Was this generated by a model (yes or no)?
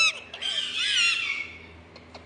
no